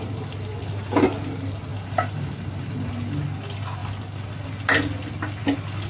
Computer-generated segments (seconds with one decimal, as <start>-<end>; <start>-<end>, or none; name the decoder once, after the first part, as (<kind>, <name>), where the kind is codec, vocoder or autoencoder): 1.7-2.9 (vocoder, BigVGAN v2)